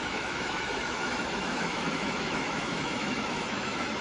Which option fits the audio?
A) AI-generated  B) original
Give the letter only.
A